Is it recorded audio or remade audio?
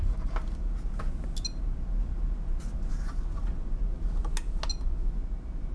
recorded